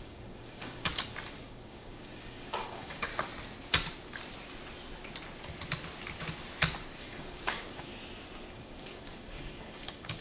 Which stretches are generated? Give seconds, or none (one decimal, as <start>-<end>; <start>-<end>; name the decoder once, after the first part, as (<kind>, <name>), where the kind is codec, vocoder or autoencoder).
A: 0.0-0.9 (codec, DAC); 1.4-3.1; 7.0-7.9; 8.5-10.2